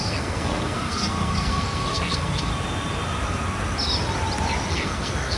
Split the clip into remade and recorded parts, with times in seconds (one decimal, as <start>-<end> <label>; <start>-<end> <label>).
0.0-2.5 remade; 2.5-4.7 recorded; 4.7-5.4 remade